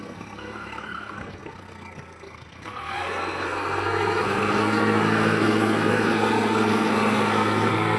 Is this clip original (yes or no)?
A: no